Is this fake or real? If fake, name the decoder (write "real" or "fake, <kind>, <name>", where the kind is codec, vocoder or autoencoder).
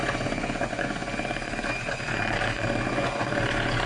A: fake, vocoder, Vocos